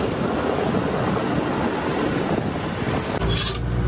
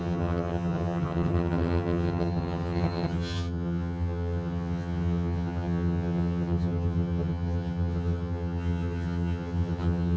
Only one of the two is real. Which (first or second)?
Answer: first